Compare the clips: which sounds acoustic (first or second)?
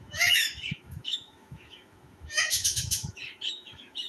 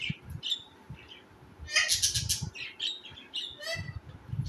second